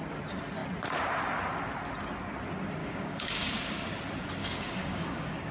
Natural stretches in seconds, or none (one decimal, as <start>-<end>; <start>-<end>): 0.0-2.8; 3.6-4.4